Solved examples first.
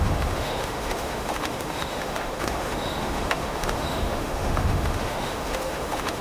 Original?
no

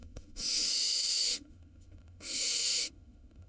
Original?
no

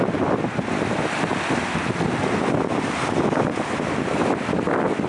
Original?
yes